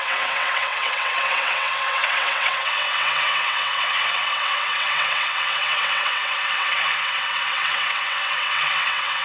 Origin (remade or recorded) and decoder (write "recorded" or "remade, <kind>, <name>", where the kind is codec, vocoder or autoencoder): remade, vocoder, WaveNeXt